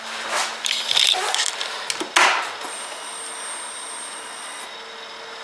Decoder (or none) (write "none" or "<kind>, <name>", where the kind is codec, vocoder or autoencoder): none